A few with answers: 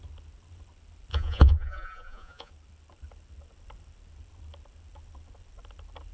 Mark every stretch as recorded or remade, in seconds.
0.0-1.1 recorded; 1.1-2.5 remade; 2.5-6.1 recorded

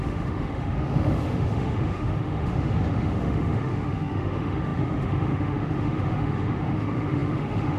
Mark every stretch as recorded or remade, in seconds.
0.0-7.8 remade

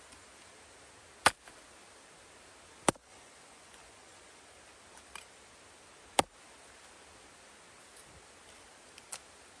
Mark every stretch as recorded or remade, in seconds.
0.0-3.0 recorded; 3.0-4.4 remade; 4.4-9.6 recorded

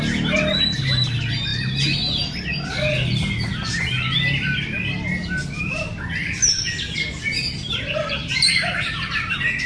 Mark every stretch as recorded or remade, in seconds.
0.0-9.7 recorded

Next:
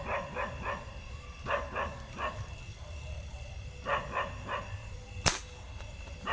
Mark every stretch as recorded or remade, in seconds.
0.0-2.7 recorded; 2.7-3.7 remade; 3.7-4.8 recorded; 4.8-5.8 remade; 5.8-6.3 recorded